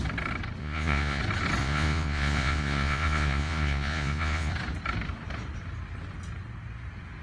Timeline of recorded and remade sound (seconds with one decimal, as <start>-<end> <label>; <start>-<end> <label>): 0.0-0.6 recorded; 0.6-1.2 remade; 1.2-1.6 recorded; 1.6-4.5 remade; 4.5-7.2 recorded